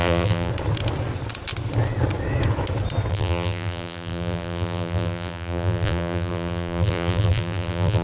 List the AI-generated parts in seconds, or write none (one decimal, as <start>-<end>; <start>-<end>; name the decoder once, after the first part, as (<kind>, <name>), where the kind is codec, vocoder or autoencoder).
0.0-0.5 (vocoder, BigVGAN v2); 3.1-8.0